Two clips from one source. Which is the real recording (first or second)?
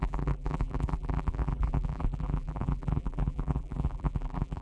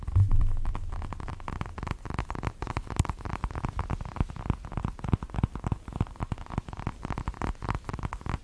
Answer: second